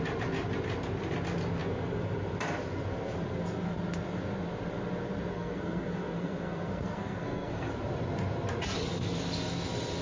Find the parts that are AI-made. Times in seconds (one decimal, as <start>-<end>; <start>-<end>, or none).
5.3-7.7